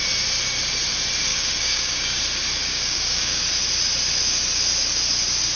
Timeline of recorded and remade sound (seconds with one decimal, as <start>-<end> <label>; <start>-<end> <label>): 0.0-1.3 recorded; 1.3-2.2 remade; 2.2-2.7 recorded; 2.7-3.4 remade; 3.4-5.6 recorded